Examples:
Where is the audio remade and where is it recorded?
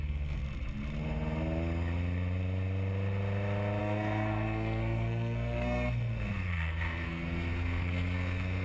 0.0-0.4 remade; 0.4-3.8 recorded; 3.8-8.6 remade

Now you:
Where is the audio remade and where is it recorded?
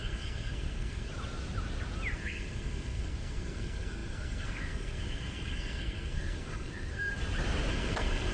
0.0-1.1 remade; 1.1-2.1 recorded; 2.1-7.1 remade; 7.1-7.7 recorded; 7.7-8.3 remade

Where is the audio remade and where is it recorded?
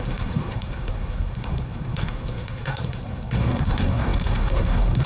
0.0-5.1 remade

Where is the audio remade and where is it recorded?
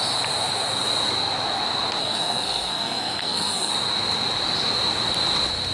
0.0-2.0 recorded; 2.0-3.7 remade; 3.7-5.7 recorded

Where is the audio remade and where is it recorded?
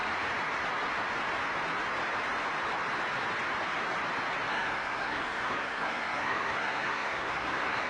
0.0-4.5 recorded; 4.5-7.9 remade